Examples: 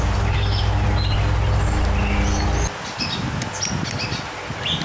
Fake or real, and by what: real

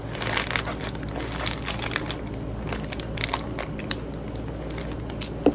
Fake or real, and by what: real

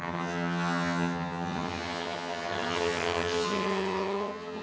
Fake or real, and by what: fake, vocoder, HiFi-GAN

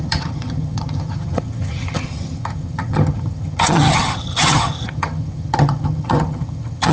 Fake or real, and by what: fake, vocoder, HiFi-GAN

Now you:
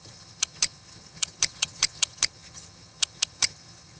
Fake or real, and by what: fake, vocoder, HiFi-GAN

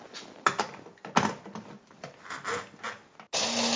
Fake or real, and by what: real